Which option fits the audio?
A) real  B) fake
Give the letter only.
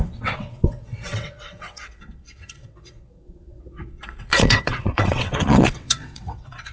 B